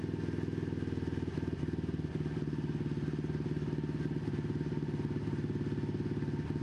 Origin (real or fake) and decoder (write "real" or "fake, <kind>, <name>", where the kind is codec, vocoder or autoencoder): real